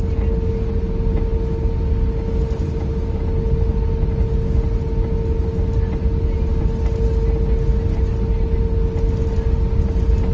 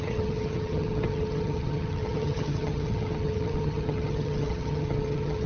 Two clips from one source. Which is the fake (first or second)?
second